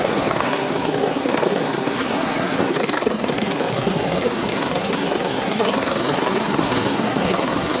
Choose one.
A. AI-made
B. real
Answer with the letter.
A